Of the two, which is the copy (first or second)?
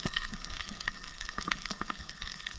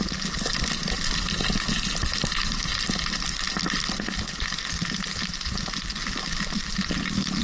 first